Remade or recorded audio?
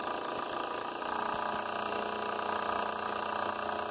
recorded